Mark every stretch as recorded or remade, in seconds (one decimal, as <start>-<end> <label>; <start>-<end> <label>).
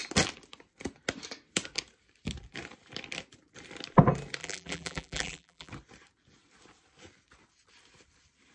0.0-4.4 recorded; 4.4-5.7 remade; 5.7-8.5 recorded